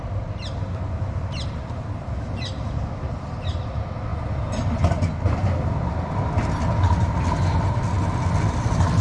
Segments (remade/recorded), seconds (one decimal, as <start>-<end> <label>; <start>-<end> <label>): 0.0-9.0 recorded

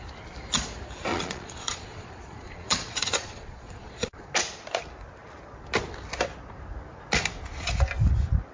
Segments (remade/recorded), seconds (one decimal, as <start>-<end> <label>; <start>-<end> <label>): 0.0-1.1 recorded; 1.1-4.3 remade; 4.3-8.5 recorded

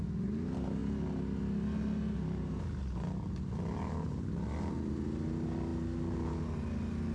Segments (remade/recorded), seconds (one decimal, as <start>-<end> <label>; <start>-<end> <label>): 0.0-7.1 recorded

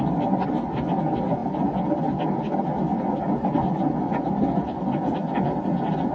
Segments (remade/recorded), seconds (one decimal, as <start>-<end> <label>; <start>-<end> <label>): 0.0-6.1 recorded

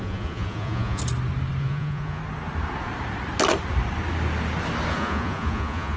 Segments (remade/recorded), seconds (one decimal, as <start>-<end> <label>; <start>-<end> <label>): 0.0-1.0 remade; 1.0-1.6 recorded; 1.6-2.2 remade; 2.2-4.9 recorded; 4.9-6.0 remade